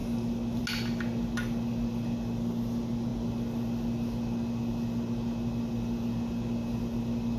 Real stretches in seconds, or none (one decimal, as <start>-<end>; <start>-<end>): 0.0-7.4

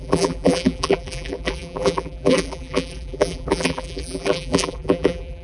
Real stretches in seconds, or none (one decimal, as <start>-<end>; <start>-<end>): none

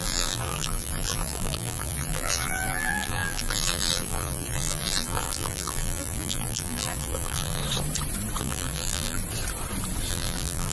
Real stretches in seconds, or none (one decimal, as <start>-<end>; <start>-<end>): 7.6-8.4; 9.2-10.1

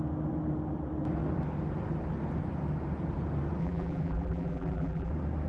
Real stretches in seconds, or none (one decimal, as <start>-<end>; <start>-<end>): 0.0-3.6; 5.1-5.5

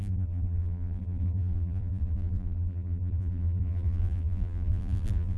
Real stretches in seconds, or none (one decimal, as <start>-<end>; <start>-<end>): none

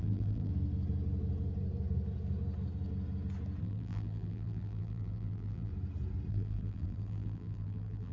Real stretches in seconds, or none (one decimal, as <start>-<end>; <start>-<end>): 0.5-3.6; 5.7-6.3

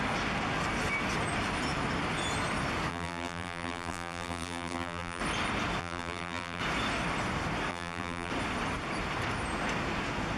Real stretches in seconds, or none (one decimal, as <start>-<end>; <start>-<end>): 0.0-2.9; 5.2-5.8; 6.6-7.7; 8.3-10.4